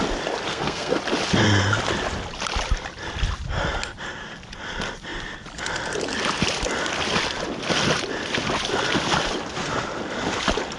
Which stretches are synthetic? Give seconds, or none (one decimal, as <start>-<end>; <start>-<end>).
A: 0.5-1.0